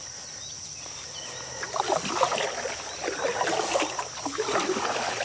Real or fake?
real